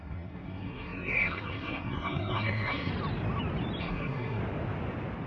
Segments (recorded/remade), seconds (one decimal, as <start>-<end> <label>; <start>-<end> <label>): 0.0-2.9 remade; 2.9-3.8 recorded; 3.8-4.4 remade; 4.4-5.3 recorded